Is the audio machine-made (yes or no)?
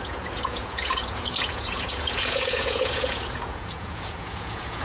yes